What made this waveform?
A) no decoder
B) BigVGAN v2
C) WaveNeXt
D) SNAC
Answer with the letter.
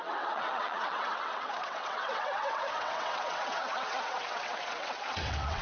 C